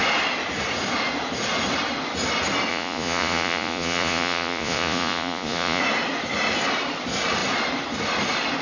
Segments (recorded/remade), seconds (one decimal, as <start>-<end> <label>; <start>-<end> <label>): 0.0-2.7 recorded; 2.7-5.8 remade; 5.8-8.6 recorded